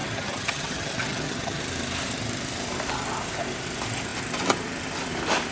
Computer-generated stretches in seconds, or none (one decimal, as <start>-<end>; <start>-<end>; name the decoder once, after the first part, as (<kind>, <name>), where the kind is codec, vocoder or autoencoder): 0.0-1.6 (vocoder, HiFi-GAN)